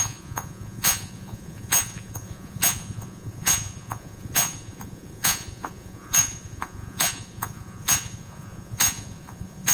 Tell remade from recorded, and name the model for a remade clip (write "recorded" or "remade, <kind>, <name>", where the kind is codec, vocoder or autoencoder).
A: remade, vocoder, Vocos